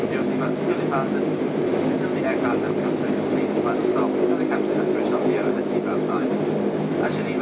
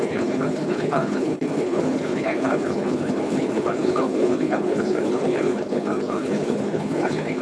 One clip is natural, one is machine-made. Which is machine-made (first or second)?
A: second